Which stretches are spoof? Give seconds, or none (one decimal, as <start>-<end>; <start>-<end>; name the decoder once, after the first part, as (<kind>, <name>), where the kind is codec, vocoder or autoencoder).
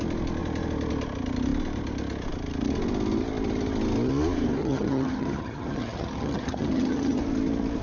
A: 4.6-7.2 (vocoder, HiFi-GAN)